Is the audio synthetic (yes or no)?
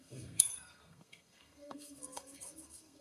yes